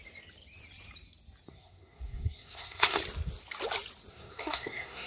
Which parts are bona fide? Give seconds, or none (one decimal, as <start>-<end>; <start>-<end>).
0.0-1.5; 3.0-4.1